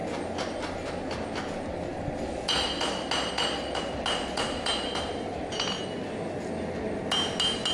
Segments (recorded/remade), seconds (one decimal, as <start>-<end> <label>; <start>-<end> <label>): 0.0-7.7 recorded